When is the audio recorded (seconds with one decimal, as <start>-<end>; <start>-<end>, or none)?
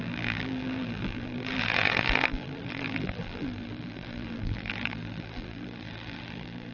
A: none